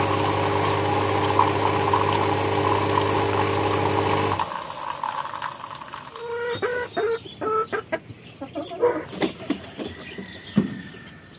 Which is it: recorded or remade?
recorded